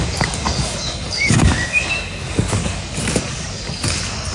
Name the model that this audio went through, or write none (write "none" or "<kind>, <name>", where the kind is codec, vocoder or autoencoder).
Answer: codec, DAC